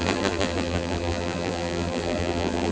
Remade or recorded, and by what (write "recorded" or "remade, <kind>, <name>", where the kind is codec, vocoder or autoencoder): remade, vocoder, BigVGAN v2